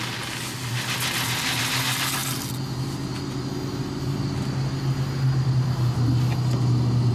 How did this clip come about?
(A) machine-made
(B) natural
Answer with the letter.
B